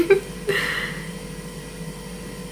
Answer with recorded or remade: recorded